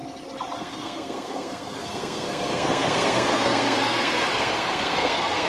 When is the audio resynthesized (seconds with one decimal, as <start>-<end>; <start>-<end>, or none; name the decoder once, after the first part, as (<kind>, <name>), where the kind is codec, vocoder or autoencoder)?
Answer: 0.6-5.5 (codec, SNAC)